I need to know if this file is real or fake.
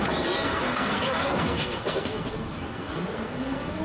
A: fake